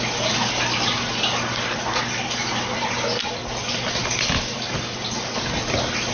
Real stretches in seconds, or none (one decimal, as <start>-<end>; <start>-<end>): 0.0-6.1